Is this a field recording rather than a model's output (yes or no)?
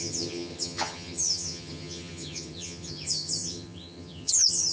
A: no